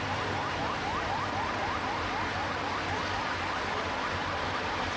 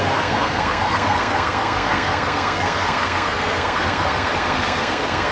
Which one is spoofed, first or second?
second